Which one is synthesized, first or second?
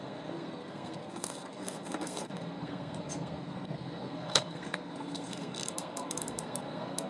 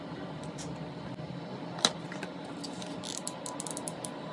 first